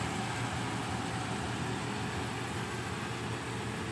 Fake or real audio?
real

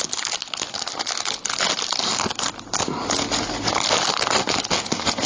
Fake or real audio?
real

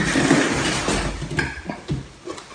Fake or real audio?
real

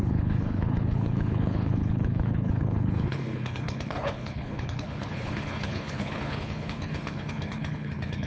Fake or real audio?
fake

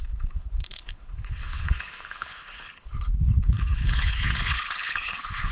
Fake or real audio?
fake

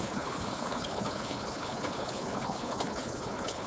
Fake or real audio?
fake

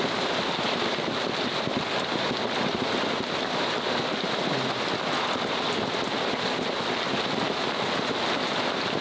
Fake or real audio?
real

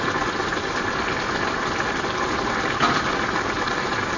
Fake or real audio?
real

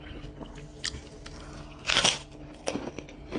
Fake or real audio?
real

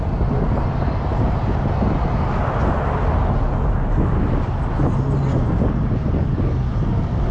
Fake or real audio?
real